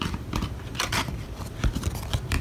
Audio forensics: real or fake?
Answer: fake